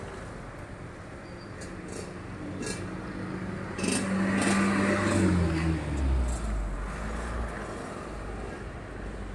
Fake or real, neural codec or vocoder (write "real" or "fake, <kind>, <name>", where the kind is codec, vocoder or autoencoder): real